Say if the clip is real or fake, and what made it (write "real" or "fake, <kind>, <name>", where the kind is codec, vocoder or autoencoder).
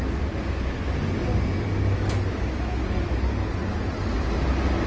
real